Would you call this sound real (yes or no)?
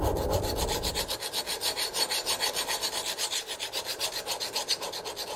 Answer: yes